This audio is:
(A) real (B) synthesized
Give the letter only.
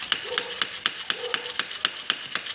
A